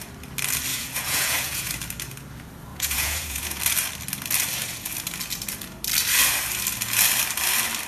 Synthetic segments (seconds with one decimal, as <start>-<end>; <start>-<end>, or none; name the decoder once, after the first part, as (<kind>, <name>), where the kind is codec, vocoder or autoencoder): 0.7-1.7 (vocoder, Vocos); 2.7-3.6